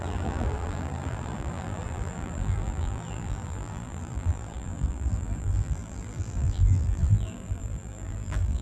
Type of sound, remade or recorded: remade